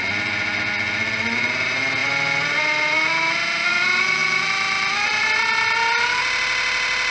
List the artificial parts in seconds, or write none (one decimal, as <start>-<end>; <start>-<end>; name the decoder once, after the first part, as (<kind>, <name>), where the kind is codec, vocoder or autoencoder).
none